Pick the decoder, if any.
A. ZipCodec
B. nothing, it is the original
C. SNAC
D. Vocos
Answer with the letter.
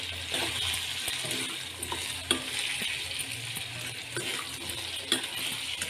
B